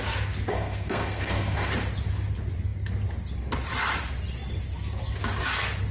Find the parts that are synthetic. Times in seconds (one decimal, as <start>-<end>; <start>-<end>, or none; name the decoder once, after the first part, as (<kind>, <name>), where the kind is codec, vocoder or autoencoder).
0.5-1.7 (codec, SNAC)